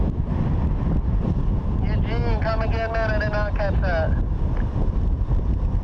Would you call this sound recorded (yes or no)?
yes